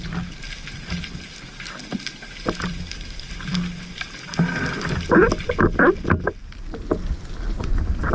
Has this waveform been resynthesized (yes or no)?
no